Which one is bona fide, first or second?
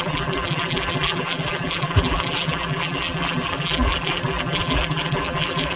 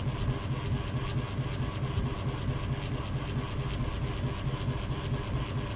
second